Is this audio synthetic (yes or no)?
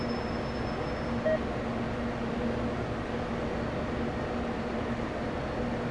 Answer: no